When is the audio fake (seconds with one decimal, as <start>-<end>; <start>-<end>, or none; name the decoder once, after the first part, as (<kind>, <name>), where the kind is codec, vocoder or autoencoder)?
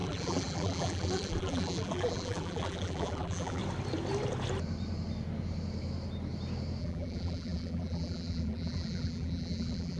0.0-3.6 (vocoder, BigVGAN v2); 6.8-10.0